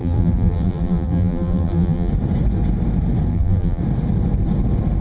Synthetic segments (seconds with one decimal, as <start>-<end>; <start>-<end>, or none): 0.0-2.1; 3.3-3.8